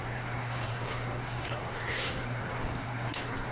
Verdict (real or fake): fake